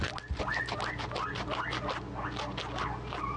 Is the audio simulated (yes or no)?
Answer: no